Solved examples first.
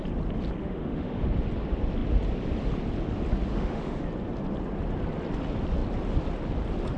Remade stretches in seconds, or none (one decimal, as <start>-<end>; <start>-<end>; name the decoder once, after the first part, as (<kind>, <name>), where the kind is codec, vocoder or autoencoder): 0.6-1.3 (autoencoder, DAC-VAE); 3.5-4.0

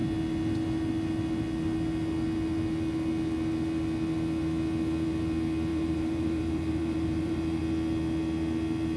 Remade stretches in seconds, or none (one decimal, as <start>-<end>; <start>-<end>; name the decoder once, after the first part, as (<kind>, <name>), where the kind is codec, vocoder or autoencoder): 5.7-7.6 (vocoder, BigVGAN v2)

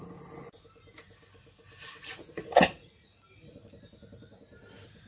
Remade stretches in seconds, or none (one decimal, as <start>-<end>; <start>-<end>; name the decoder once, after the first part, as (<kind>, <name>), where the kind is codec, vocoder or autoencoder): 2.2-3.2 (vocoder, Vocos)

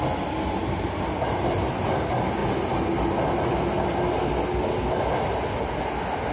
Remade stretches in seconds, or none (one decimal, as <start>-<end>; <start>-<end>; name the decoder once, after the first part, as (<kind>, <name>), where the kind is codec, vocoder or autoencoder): none

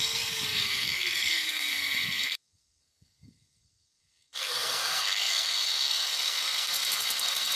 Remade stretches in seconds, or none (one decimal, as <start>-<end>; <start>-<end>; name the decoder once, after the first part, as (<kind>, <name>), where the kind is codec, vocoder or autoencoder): 0.0-7.6 (codec, SNAC)

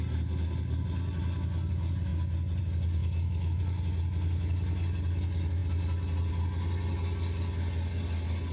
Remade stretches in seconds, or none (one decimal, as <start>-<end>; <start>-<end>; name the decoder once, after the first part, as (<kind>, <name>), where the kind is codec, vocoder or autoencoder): 3.0-3.6 (autoencoder, DAC-VAE)

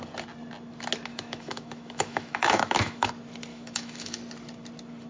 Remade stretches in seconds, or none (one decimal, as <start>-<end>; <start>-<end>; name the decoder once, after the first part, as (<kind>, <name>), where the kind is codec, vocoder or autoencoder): 1.1-3.1 (autoencoder, DAC-VAE); 3.5-4.2

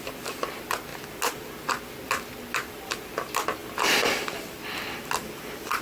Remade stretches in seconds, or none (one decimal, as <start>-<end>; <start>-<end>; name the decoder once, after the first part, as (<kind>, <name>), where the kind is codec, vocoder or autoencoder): none